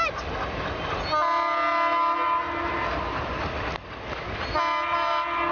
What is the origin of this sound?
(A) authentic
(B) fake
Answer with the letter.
A